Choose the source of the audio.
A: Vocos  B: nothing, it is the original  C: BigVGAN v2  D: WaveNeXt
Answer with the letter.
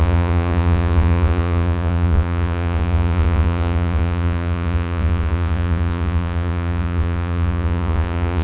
A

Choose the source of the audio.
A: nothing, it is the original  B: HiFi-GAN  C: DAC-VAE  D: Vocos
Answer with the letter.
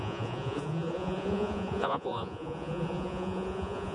D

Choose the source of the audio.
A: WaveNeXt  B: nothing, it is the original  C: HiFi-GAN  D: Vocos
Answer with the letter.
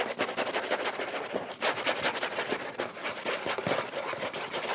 B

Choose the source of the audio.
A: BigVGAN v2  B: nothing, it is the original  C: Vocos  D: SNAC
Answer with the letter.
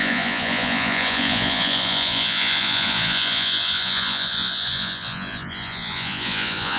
C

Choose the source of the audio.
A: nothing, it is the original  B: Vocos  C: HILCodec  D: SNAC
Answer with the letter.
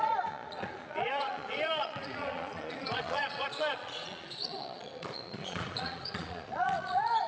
B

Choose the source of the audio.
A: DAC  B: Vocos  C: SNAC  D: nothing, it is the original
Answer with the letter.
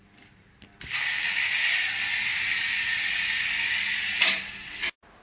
D